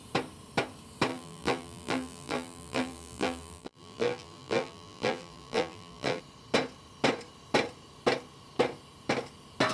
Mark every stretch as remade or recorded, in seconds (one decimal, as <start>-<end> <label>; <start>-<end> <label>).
0.0-1.1 recorded; 1.1-6.2 remade; 6.2-9.7 recorded